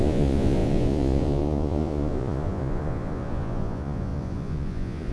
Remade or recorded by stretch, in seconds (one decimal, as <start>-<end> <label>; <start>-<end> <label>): 0.0-5.1 remade